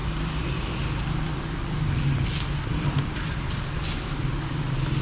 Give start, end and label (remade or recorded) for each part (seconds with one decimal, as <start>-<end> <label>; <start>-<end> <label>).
0.0-5.0 recorded